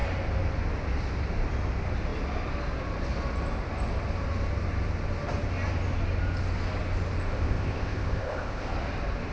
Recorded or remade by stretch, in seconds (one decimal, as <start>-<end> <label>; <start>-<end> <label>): 0.0-7.3 recorded; 7.3-8.7 remade; 8.7-9.3 recorded